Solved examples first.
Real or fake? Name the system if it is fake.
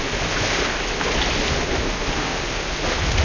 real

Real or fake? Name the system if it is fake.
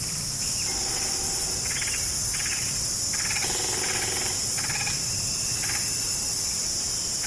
real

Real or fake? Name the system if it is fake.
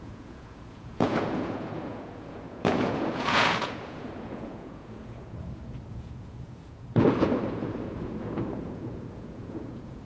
fake, vocoder, Vocos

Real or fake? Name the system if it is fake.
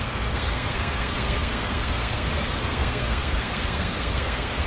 fake, codec, SNAC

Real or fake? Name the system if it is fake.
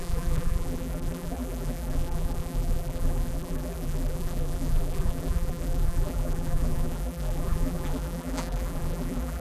fake, vocoder, BigVGAN v2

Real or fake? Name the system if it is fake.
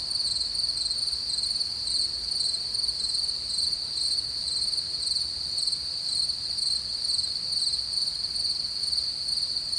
real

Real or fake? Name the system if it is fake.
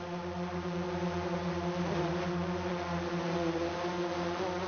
real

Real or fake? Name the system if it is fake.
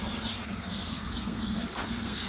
fake, codec, SNAC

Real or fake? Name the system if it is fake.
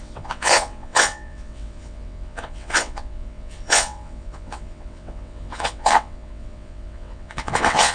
fake, vocoder, WaveNeXt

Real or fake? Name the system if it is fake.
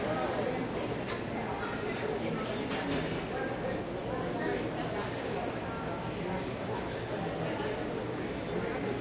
real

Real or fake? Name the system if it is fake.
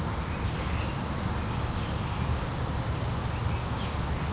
real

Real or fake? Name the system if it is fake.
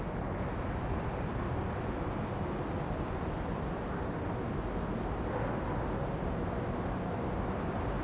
real